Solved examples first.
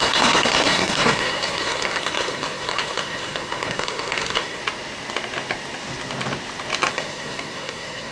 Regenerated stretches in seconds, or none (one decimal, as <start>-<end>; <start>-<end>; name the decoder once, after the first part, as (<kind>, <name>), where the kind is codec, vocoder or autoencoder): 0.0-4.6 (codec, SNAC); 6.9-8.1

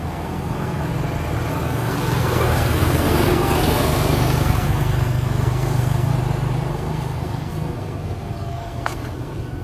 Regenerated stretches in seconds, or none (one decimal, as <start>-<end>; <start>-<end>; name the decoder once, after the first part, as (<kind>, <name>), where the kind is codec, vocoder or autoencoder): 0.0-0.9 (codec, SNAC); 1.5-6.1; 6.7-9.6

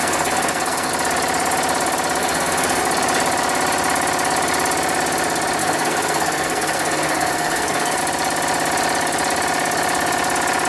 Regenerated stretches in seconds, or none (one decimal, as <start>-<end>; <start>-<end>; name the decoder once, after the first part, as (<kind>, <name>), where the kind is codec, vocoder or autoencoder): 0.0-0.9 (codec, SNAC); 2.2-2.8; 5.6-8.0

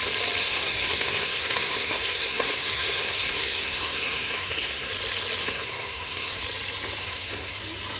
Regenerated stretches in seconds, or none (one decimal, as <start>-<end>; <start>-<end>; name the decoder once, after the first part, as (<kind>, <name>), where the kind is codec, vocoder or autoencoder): 0.4-4.9 (codec, SNAC); 5.4-6.4; 7.0-7.6